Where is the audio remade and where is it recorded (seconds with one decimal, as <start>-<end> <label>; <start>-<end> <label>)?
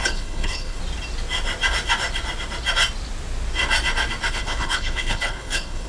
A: 0.0-0.8 remade; 0.8-4.3 recorded; 4.3-5.9 remade